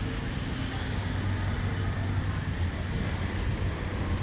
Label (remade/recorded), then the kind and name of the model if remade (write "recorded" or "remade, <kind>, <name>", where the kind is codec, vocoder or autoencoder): recorded